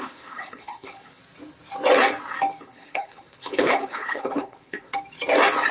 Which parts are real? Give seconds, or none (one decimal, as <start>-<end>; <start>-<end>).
1.2-2.6; 4.9-5.7